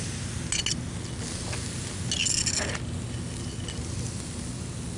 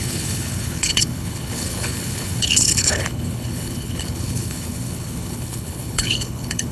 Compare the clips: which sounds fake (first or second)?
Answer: second